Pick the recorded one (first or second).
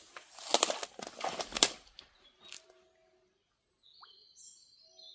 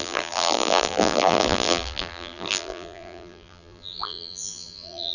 first